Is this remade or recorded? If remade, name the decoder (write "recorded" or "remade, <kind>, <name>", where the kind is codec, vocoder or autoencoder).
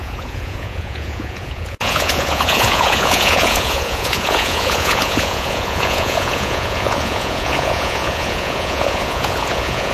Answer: remade, vocoder, Vocos